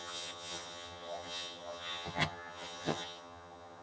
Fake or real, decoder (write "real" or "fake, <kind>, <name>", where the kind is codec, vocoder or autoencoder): fake, vocoder, HiFi-GAN